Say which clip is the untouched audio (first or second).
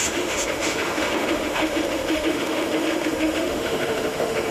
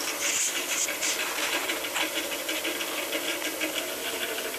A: second